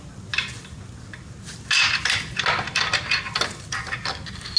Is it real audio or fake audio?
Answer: real